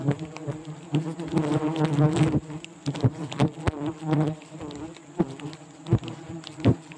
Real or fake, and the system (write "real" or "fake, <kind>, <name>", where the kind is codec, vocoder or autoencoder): fake, vocoder, BigVGAN v2